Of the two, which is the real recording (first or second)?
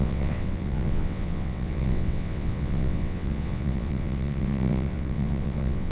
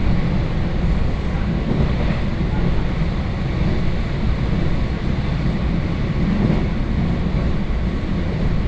second